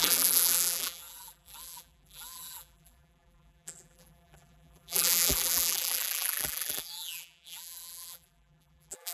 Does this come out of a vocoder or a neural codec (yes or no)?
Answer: yes